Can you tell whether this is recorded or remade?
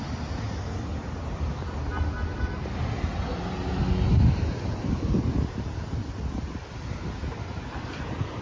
recorded